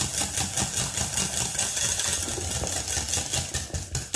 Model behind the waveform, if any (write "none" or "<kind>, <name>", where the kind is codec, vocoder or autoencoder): none